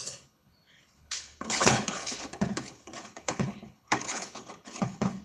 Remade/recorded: remade